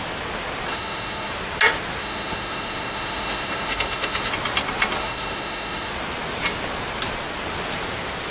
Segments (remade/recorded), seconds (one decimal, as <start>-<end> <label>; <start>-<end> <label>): 0.0-0.7 recorded; 0.7-1.3 remade; 1.3-2.0 recorded; 2.0-4.3 remade; 4.3-5.0 recorded; 5.0-5.9 remade; 5.9-8.3 recorded